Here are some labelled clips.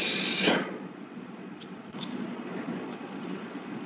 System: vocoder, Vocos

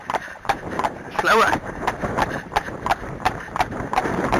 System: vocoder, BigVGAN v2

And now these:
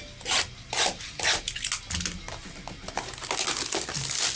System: none